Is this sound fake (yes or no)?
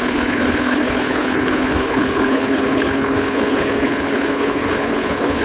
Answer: yes